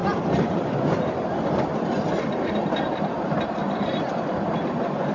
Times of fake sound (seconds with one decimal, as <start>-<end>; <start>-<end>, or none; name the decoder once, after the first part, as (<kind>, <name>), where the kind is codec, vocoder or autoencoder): 0.0-3.1 (vocoder, BigVGAN v2); 3.6-5.1